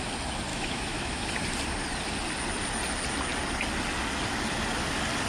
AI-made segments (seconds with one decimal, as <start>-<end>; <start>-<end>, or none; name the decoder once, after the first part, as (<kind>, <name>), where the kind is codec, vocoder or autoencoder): 0.5-1.3 (autoencoder, DAC-VAE)